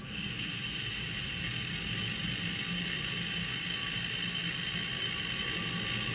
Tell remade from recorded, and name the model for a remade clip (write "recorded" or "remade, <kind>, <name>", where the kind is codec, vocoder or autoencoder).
recorded